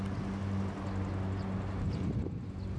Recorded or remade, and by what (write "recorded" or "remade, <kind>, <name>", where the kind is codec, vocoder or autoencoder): recorded